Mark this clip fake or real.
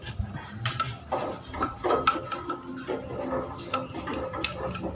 real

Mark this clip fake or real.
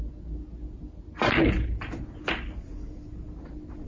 real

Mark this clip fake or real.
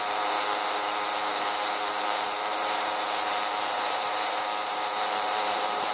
fake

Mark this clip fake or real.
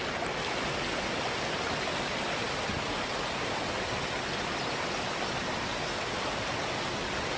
real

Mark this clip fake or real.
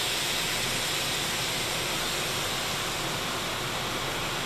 fake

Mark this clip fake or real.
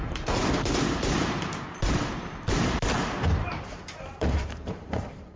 fake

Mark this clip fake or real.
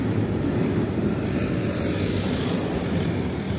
real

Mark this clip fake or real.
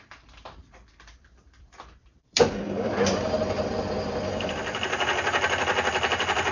fake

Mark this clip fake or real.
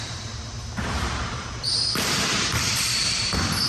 fake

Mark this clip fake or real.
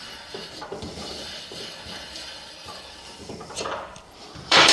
fake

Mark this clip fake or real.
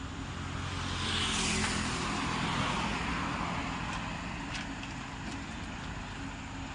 real